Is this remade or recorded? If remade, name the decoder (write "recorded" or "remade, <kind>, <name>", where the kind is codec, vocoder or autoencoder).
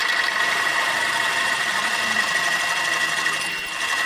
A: remade, vocoder, BigVGAN v2